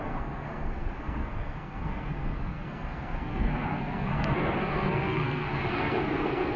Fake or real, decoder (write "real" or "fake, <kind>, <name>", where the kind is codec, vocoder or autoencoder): fake, codec, SNAC